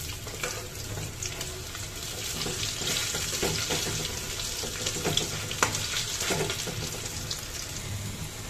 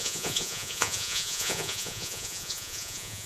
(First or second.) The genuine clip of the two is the first